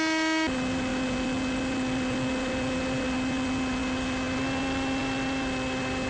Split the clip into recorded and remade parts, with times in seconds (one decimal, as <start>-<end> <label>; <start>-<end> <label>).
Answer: 0.0-6.1 recorded